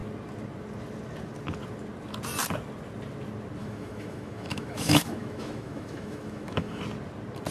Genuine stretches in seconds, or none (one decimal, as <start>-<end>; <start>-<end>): 0.0-3.6; 6.8-7.5